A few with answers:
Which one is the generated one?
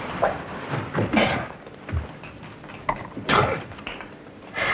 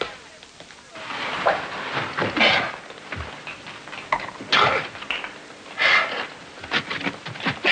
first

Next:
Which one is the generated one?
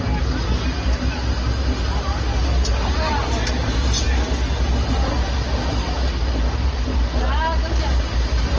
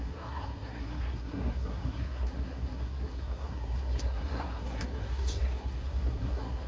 second